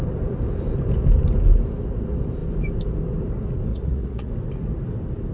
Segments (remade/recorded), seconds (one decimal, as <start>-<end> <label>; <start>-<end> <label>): 0.0-3.7 recorded; 3.7-4.3 remade; 4.3-5.3 recorded